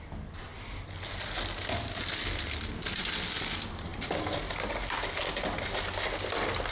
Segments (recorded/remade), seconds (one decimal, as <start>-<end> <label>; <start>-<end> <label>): 0.0-6.7 recorded